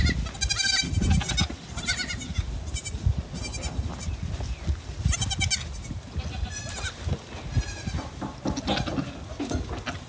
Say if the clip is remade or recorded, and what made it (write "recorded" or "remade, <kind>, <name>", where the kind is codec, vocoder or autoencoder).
recorded